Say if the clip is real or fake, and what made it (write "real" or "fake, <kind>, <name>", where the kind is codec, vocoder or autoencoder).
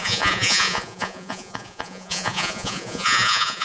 fake, vocoder, Vocos